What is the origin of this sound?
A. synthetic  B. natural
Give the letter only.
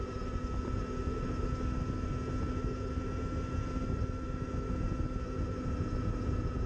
B